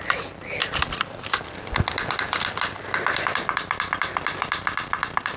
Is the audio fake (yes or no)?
no